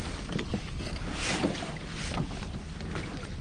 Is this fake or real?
real